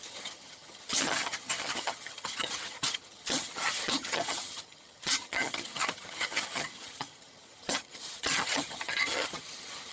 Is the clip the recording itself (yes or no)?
no